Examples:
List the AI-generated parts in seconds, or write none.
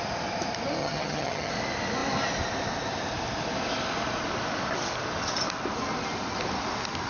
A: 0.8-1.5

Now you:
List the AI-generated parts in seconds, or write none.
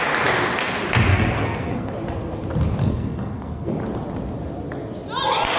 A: 1.1-1.9; 2.8-3.7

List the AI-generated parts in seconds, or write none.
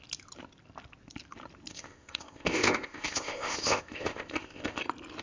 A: 1.7-4.8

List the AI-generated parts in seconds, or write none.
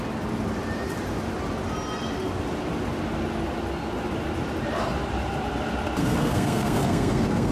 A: 6.0-7.5